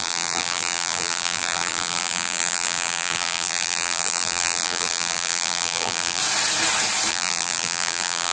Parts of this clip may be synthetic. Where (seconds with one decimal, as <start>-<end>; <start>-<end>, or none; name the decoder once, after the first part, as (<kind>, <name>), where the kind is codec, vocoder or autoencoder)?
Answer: 0.0-6.2 (vocoder, BigVGAN v2); 7.1-8.3